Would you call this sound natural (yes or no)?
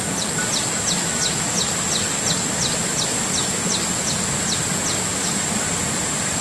yes